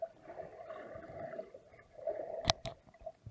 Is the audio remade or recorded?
recorded